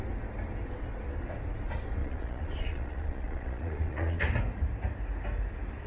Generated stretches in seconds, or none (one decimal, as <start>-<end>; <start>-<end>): 2.0-4.2